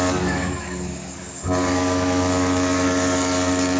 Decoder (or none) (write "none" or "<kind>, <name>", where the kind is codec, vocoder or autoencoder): codec, DAC